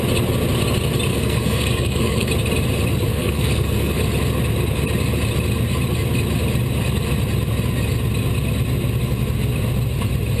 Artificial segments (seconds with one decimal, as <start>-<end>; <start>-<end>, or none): 1.1-2.3; 3.1-4.0